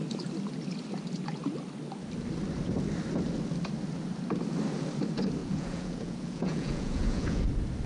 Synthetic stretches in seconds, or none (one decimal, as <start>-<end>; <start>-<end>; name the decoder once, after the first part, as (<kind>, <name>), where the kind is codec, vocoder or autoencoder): 5.4-7.4 (vocoder, Vocos)